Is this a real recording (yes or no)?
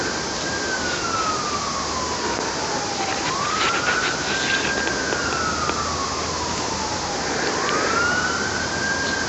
yes